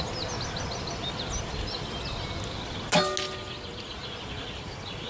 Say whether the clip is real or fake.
real